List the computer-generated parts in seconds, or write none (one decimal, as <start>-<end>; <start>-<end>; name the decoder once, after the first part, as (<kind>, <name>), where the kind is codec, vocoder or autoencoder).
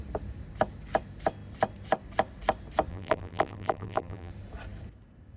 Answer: 2.9-4.3 (vocoder, BigVGAN v2)